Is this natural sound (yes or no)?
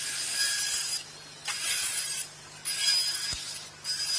yes